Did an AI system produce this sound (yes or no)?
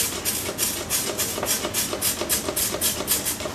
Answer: no